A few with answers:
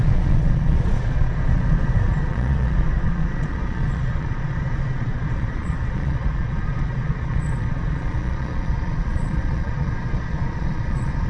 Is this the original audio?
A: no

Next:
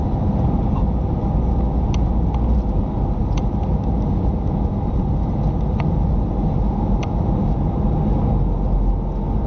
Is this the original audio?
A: yes